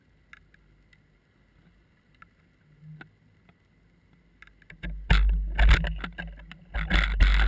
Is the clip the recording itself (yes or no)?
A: yes